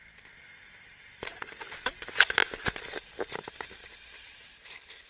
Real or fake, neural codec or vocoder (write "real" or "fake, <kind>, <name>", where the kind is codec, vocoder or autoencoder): real